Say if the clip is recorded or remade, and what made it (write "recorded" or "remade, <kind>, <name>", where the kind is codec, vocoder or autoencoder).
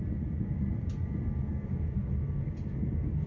recorded